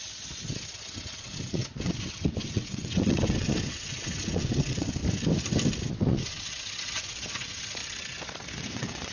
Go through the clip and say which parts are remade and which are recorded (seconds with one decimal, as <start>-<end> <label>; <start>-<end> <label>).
0.0-5.0 remade; 5.0-5.8 recorded; 5.8-7.8 remade; 7.8-8.5 recorded; 8.5-9.1 remade